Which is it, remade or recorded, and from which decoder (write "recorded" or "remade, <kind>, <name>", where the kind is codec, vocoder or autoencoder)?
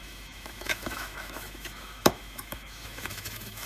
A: remade, autoencoder, DAC-VAE